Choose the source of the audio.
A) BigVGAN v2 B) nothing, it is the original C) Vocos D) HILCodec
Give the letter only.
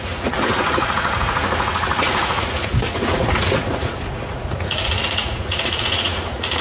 C